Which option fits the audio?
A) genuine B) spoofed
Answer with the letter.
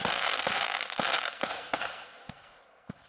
B